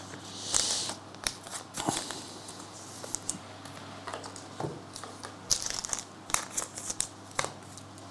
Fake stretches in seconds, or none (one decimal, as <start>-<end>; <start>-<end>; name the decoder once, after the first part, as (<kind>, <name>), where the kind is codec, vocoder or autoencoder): 0.0-1.5 (vocoder, BigVGAN v2); 3.4-8.1